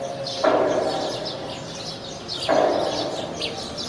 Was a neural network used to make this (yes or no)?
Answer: no